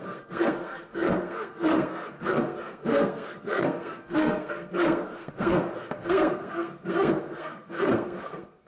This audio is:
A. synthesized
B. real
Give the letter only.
A